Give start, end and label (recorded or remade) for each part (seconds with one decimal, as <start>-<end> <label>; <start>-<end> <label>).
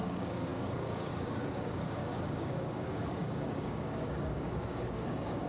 0.0-5.5 remade